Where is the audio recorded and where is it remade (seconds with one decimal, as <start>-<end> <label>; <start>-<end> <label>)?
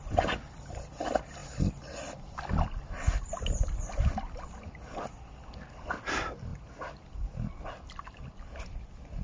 0.0-1.4 recorded; 1.4-2.4 remade; 2.4-6.5 recorded; 6.5-8.3 remade; 8.3-9.2 recorded